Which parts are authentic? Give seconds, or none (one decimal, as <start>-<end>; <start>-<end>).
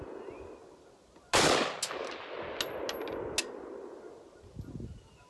0.0-5.3